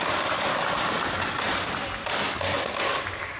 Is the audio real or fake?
real